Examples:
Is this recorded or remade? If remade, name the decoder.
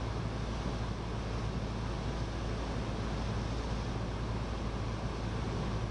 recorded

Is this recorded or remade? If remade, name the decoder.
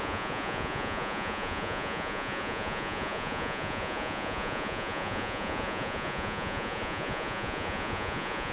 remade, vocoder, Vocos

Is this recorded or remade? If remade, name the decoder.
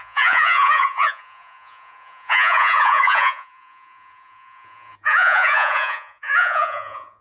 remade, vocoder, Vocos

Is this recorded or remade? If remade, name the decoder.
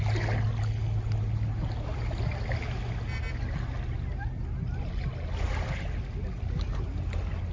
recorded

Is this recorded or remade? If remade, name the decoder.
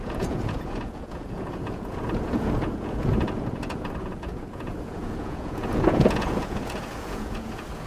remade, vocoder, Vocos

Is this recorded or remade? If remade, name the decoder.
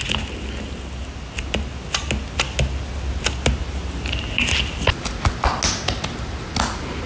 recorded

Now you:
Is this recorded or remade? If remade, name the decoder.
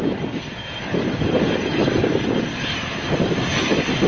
recorded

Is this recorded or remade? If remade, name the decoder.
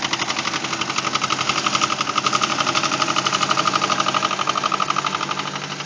recorded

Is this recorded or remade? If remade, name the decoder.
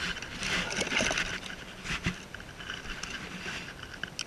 recorded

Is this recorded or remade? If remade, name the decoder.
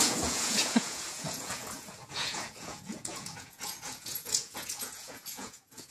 remade, vocoder, Vocos